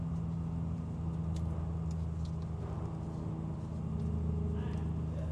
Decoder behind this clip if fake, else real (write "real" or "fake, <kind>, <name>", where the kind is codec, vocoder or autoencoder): real